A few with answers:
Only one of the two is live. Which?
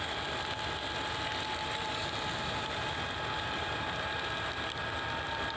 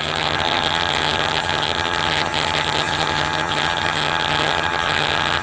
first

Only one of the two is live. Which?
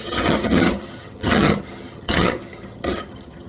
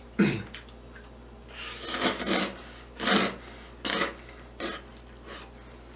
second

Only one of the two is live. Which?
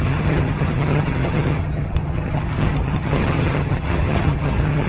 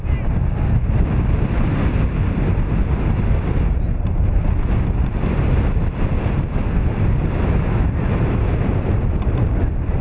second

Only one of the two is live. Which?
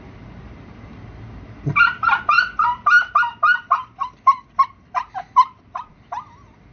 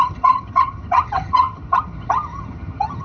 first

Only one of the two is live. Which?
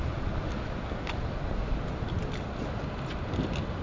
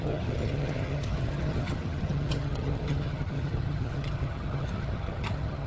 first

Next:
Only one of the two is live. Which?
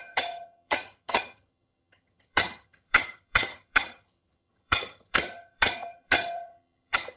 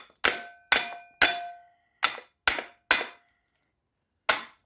second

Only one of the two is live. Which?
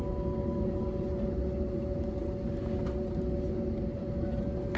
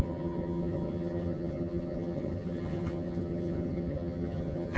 first